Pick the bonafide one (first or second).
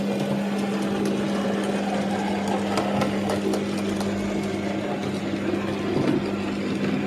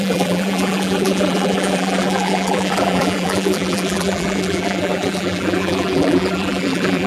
first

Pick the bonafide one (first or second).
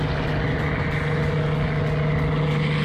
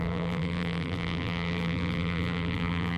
first